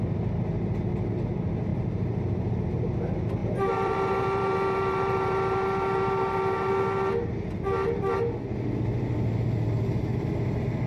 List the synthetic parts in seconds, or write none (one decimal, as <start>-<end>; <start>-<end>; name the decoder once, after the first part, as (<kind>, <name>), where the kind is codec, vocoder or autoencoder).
1.7-2.5 (vocoder, BigVGAN v2); 3.4-6.7